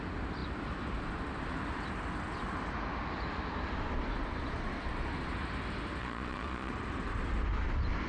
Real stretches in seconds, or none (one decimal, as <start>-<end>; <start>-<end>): 0.0-6.0; 6.7-8.1